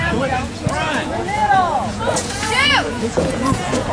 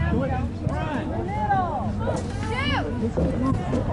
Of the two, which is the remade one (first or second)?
first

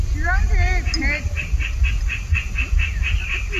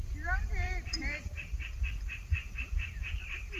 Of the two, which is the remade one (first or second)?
second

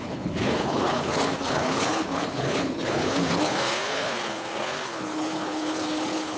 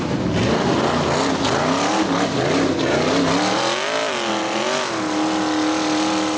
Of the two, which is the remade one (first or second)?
first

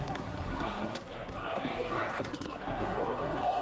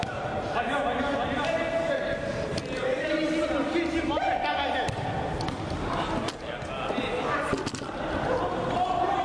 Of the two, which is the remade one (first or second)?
first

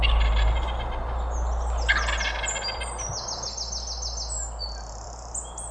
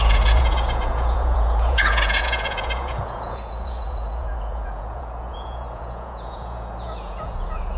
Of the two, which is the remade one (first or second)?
second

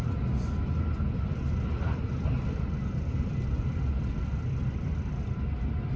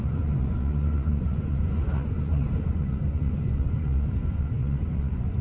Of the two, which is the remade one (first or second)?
second